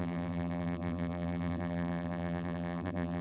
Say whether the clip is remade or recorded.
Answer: remade